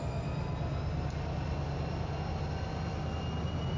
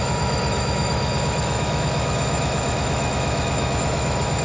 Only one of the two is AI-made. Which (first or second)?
second